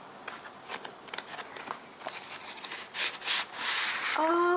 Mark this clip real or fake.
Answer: real